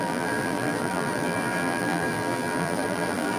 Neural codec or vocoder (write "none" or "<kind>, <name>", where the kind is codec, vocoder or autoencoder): vocoder, BigVGAN v2